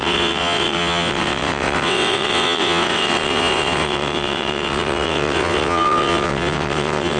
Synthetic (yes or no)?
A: yes